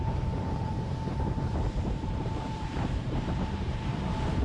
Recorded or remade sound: remade